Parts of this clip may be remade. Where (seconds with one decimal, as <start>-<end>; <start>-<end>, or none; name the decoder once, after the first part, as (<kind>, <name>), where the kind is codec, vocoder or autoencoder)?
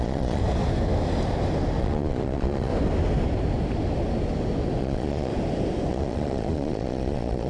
0.0-0.4 (vocoder, Vocos); 1.8-2.7; 4.8-5.3; 5.9-7.5